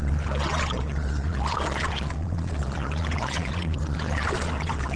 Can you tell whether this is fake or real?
fake